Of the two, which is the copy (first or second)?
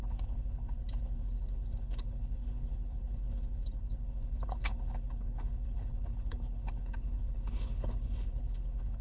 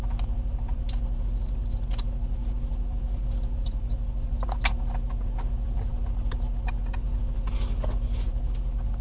first